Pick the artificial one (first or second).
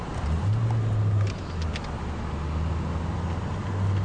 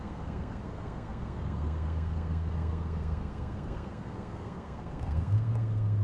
second